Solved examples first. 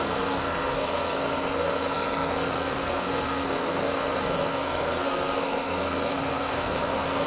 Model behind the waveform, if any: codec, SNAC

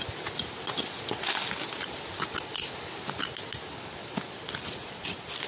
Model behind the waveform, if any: none